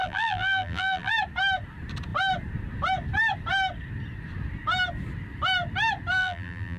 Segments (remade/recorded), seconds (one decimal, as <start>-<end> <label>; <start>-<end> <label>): 0.0-1.1 remade; 1.1-6.2 recorded; 6.2-6.8 remade